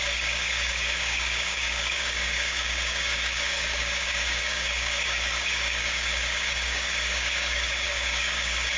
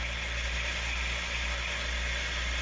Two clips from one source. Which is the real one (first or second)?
second